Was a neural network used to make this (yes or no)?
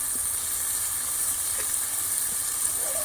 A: no